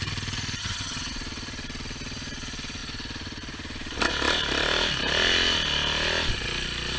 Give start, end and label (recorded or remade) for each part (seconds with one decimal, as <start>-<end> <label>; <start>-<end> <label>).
0.0-0.6 recorded; 0.6-1.1 remade; 1.1-7.0 recorded